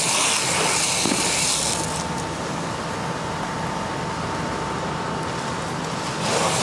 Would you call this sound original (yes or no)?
yes